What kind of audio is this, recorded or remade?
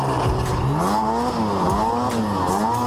recorded